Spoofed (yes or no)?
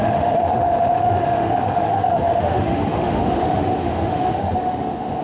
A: yes